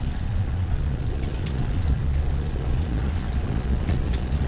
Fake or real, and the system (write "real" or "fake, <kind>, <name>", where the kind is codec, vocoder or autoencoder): fake, vocoder, Vocos